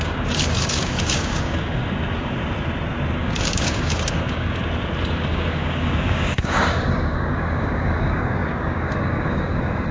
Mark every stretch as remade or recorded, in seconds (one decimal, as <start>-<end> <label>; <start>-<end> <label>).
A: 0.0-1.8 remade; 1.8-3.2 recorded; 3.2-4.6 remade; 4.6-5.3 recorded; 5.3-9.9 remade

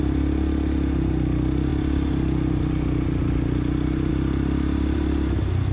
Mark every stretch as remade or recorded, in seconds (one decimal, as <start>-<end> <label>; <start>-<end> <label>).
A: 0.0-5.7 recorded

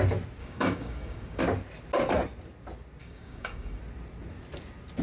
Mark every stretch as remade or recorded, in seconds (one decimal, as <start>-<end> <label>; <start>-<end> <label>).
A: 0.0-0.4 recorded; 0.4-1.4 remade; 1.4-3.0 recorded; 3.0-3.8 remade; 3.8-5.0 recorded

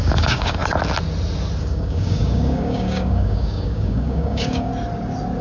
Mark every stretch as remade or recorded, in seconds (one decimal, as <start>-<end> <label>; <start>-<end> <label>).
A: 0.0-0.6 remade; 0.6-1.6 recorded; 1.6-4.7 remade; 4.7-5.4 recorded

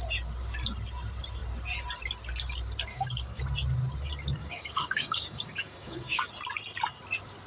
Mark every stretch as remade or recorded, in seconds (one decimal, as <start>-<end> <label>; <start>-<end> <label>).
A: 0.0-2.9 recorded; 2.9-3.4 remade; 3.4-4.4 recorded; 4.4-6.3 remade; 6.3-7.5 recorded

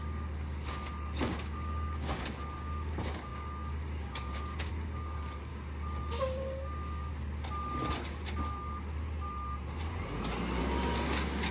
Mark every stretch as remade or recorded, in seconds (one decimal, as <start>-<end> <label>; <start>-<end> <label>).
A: 0.0-5.5 remade; 5.5-6.0 recorded; 6.0-7.1 remade; 7.1-10.6 recorded; 10.6-11.5 remade

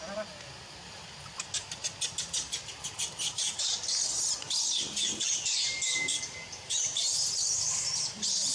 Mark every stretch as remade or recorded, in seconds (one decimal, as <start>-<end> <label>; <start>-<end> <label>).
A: 0.0-8.5 recorded

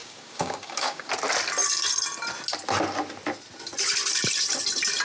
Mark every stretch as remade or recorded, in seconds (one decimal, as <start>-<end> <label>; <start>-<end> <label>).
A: 0.0-1.1 remade; 1.1-5.0 recorded